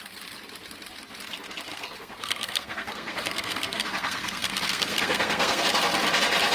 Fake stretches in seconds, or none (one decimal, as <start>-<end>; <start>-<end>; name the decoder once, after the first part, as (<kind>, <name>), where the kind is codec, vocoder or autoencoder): 1.7-5.6 (codec, SNAC)